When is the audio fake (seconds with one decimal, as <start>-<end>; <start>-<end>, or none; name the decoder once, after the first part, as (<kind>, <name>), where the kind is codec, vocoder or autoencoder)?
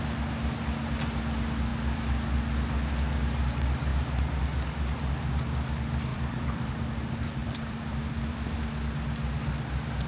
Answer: 1.7-2.7 (vocoder, BigVGAN v2); 6.1-6.7; 7.4-8.6